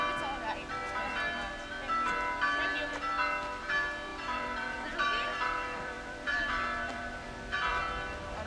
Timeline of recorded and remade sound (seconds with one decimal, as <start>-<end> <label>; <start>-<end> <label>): 0.0-4.1 recorded; 4.1-7.8 remade; 7.8-8.5 recorded